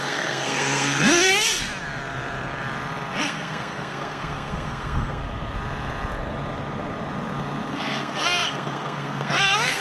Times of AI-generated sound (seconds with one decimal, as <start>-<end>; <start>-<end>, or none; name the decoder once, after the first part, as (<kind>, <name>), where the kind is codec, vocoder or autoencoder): 0.0-1.7 (codec, SNAC); 3.2-5.2; 7.7-9.8